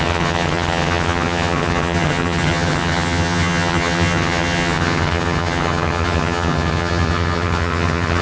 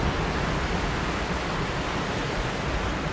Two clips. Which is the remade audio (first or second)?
first